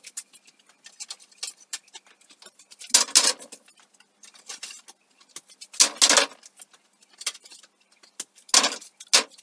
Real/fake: real